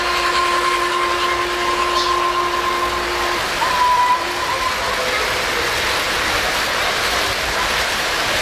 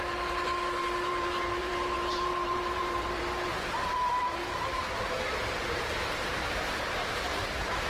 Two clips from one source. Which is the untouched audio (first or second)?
first